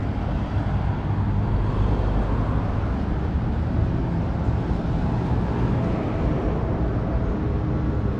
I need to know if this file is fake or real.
real